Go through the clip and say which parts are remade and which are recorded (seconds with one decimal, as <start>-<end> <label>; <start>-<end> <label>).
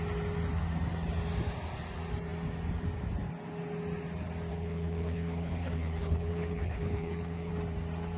0.0-4.5 recorded; 4.5-7.5 remade; 7.5-8.2 recorded